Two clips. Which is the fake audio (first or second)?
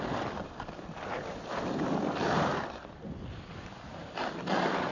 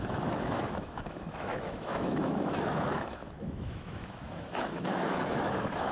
second